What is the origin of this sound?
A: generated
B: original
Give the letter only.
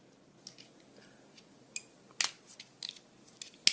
B